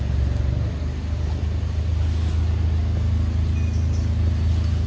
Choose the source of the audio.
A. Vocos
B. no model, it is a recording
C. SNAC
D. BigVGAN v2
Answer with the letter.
B